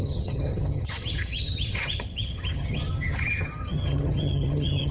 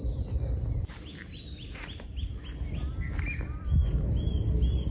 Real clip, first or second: second